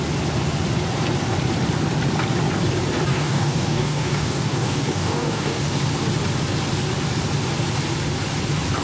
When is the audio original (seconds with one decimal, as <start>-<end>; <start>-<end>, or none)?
0.0-3.1; 5.6-8.8